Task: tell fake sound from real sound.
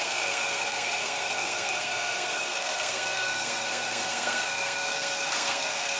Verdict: fake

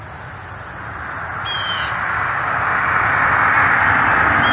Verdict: real